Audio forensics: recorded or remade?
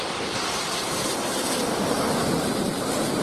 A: recorded